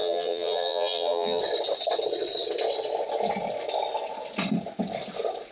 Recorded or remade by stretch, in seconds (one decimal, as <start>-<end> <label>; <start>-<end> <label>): 0.0-1.4 remade; 1.4-5.5 recorded